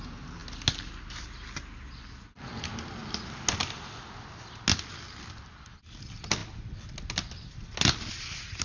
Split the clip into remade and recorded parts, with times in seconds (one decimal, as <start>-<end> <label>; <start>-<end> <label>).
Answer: 0.0-8.6 recorded